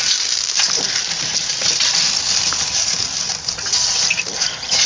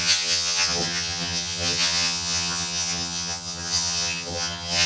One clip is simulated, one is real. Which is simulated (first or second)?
second